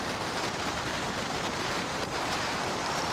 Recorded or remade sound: remade